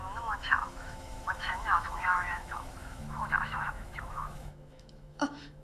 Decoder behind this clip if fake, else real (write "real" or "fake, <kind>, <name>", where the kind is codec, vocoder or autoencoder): fake, autoencoder, DAC-VAE